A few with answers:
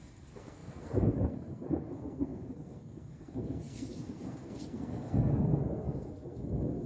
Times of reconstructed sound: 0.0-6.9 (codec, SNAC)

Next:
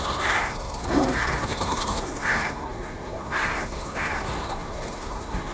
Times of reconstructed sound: 0.0-5.5 (codec, SNAC)

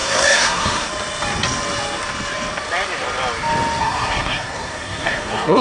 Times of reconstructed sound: 0.0-0.9 (codec, SNAC); 3.8-5.6

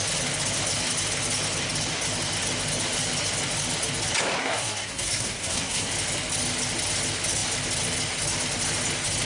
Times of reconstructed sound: 4.4-5.9 (codec, SNAC)

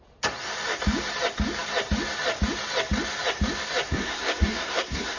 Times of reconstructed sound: 3.9-5.2 (codec, SNAC)

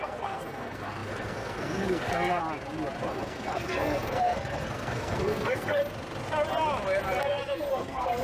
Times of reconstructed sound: 0.0-2.4 (codec, SNAC); 3.1-5.8; 7.2-8.2

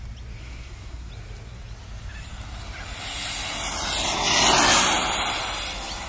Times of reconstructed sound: 0.4-1.1 (codec, SNAC)

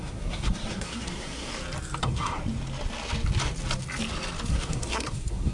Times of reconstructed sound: 0.0-1.5 (codec, SNAC); 2.0-2.4; 4.5-5.5